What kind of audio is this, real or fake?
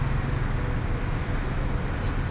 real